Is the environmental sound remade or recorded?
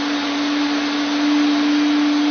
recorded